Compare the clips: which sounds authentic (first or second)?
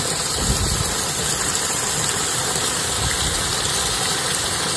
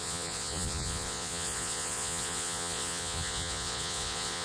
first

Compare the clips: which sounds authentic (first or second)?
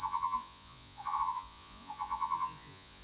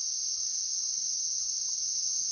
second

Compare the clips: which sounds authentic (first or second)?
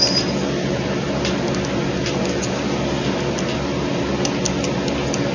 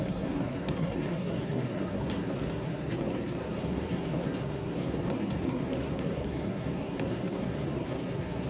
first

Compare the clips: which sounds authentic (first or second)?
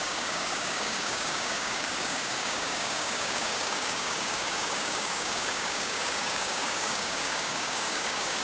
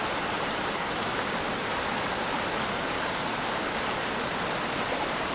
second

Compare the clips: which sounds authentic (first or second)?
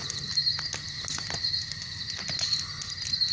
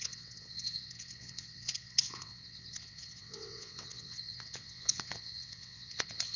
first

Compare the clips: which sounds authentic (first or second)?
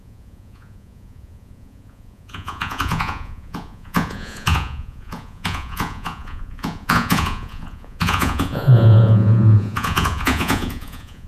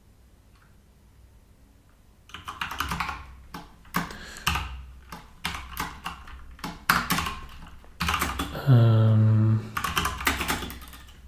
second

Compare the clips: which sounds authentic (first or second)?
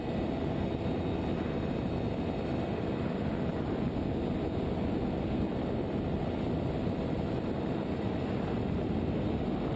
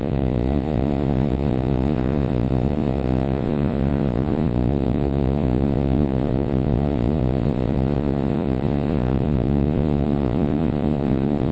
first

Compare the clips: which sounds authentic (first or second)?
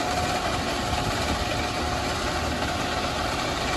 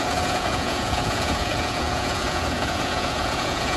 first